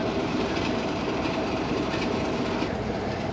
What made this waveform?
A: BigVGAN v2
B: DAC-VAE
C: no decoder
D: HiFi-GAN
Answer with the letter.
A